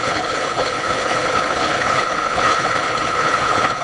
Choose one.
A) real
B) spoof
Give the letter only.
B